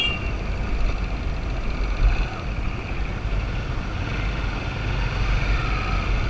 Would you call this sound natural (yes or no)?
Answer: yes